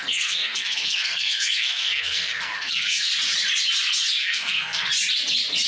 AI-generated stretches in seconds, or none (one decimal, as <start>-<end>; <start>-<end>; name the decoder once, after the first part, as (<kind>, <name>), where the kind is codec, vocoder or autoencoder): 0.0-3.1 (codec, SNAC); 4.2-4.9